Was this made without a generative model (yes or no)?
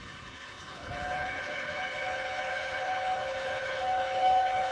no